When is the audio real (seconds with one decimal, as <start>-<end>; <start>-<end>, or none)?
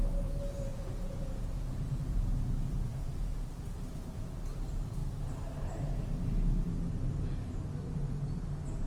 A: 0.0-0.7; 3.5-8.9